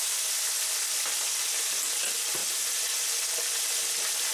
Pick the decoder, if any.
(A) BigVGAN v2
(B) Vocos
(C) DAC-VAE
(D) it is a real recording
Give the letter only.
D